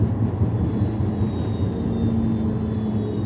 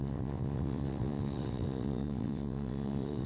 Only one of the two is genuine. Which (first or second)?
first